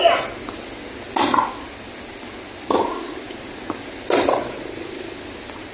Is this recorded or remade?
recorded